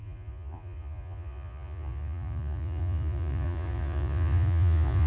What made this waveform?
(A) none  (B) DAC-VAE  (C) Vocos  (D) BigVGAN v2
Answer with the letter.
C